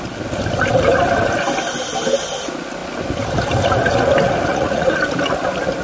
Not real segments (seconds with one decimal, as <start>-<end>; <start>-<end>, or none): 4.5-5.0